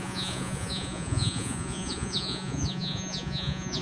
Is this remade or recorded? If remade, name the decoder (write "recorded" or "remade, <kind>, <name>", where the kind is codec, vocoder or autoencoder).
remade, vocoder, Vocos